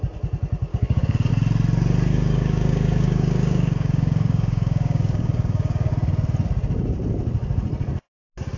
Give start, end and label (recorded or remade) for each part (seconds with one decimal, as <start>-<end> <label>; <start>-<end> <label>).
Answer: 0.0-0.7 recorded; 0.7-1.3 remade; 1.3-2.1 recorded; 2.1-5.9 remade; 5.9-8.6 recorded